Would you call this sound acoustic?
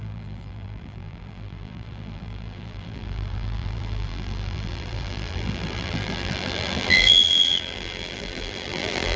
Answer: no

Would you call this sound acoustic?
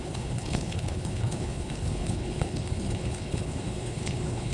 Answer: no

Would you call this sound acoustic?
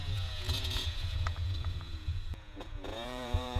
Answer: no